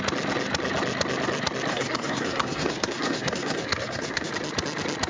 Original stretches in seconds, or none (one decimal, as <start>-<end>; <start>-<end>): 0.0-1.7; 4.3-5.1